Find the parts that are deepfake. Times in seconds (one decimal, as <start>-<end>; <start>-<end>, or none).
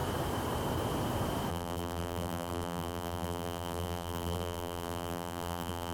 1.5-5.9